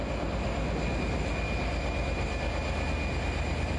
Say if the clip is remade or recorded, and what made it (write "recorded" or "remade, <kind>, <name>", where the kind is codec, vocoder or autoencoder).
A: recorded